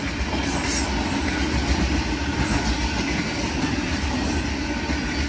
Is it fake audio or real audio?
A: real